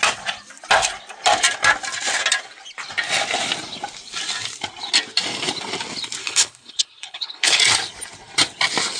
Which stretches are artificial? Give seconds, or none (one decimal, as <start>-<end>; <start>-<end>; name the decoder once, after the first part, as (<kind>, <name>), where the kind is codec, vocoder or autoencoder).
6.2-7.6 (codec, HILCodec)